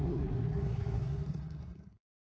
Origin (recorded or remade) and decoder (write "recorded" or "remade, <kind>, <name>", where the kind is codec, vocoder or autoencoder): remade, codec, SNAC